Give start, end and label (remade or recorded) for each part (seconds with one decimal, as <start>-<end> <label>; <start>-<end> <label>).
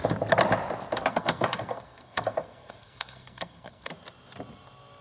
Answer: 0.0-1.1 recorded; 1.1-3.9 remade; 3.9-5.0 recorded